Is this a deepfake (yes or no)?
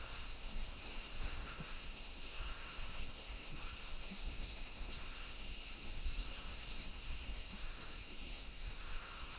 yes